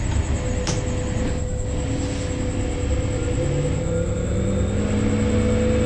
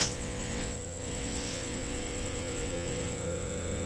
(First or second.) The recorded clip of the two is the first